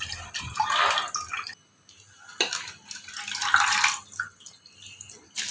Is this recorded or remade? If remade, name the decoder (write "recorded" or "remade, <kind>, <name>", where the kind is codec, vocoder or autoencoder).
recorded